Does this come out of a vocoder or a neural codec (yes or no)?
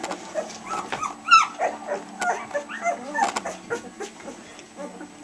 no